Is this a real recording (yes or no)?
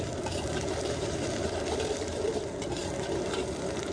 no